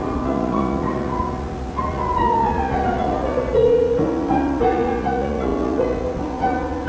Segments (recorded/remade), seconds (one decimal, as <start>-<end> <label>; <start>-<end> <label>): 0.0-6.9 remade